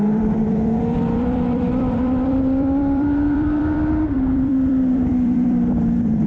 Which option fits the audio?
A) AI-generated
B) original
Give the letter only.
A